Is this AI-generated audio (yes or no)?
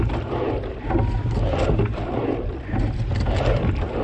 no